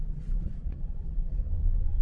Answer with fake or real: fake